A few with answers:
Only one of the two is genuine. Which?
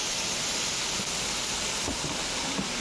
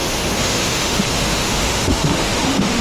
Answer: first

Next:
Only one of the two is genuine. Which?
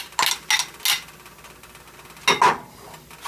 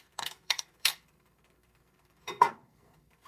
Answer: first